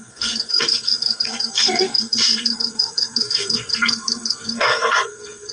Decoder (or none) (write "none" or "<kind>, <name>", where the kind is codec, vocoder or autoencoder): codec, SNAC